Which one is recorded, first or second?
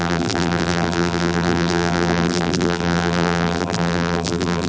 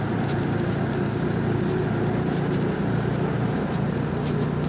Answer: second